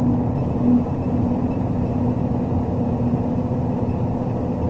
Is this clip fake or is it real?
real